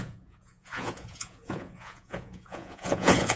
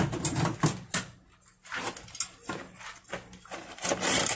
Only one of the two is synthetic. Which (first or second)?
first